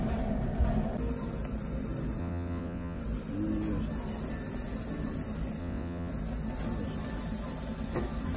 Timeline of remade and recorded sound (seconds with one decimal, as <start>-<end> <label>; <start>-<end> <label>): 0.0-2.2 recorded; 2.2-3.0 remade; 3.0-5.6 recorded; 5.6-6.1 remade; 6.1-8.4 recorded